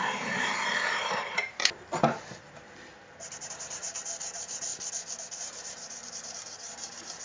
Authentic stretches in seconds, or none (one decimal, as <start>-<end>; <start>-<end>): 4.7-5.4